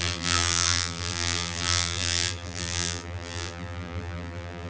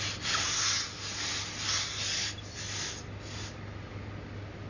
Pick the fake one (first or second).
first